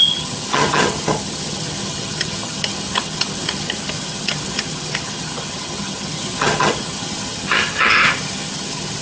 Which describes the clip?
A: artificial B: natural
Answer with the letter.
A